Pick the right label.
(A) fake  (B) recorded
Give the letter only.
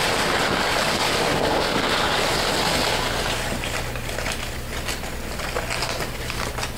B